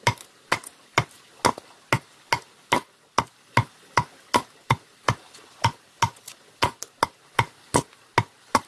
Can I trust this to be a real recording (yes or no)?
yes